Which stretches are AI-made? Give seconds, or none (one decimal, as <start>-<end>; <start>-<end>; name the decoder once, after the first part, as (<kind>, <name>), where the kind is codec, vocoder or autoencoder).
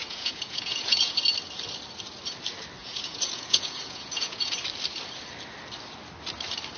0.0-1.2 (vocoder, Vocos); 2.8-4.6